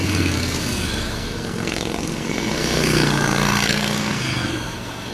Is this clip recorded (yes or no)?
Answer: no